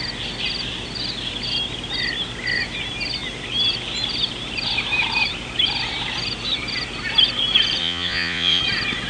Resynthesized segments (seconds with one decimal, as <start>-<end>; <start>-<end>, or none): 7.8-8.6